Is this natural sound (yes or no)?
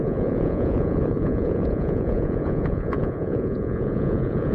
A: no